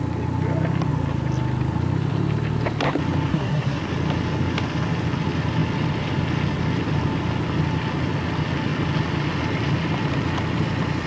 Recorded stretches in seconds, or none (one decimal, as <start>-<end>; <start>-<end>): 0.0-3.3; 3.8-11.1